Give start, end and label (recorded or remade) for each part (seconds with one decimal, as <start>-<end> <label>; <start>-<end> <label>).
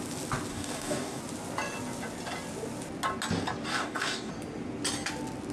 0.0-0.5 recorded; 0.5-1.2 remade; 1.2-3.7 recorded; 3.7-4.3 remade; 4.3-5.5 recorded